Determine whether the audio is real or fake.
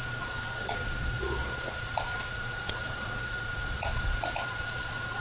fake